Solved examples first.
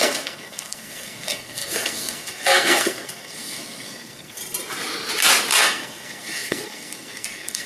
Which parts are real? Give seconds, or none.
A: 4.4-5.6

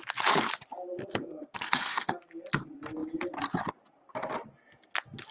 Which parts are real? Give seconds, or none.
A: 0.0-1.0; 2.2-5.3

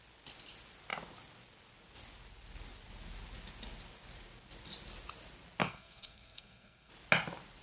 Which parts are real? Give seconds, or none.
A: 0.0-5.6; 6.9-7.6

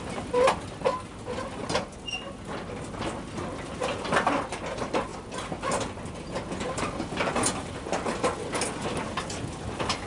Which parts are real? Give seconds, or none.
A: 0.0-10.1

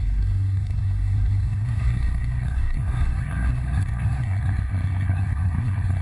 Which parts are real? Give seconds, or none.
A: none

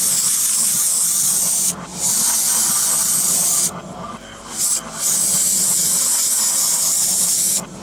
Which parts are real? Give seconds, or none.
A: 0.0-7.8